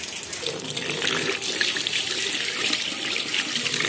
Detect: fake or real real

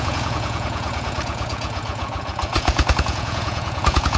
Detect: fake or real fake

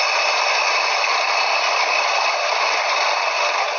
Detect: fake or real real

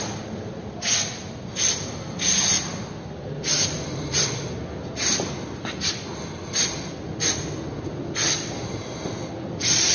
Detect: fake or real real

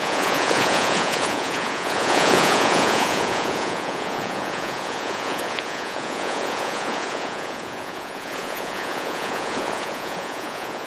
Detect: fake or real fake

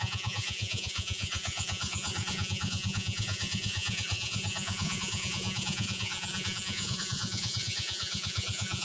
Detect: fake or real fake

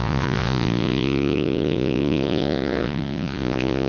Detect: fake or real fake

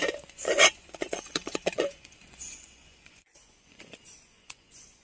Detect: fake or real fake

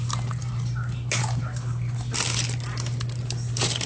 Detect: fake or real real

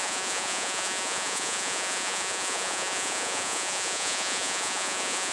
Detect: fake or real fake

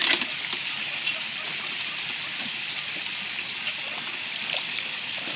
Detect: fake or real real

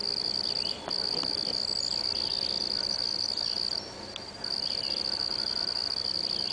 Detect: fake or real real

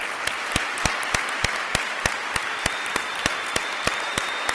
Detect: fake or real real